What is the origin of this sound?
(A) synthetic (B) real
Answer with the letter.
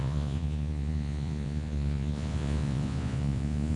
A